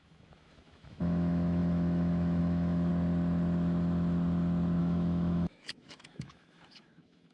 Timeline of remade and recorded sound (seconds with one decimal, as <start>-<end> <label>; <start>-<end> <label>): 0.0-2.9 remade; 2.9-4.8 recorded; 4.8-7.3 remade